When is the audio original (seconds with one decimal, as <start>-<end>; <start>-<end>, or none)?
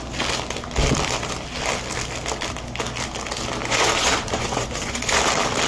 0.0-3.6; 5.2-5.7